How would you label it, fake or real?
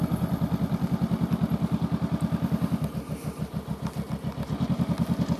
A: real